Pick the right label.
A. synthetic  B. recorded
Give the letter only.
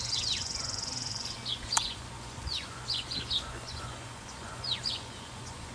A